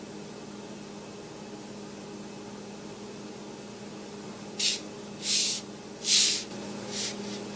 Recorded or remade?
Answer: recorded